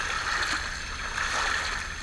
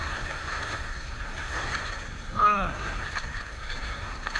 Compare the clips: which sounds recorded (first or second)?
first